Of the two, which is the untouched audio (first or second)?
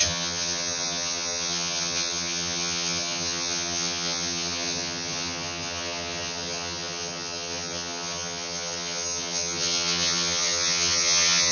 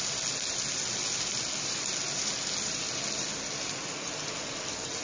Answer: second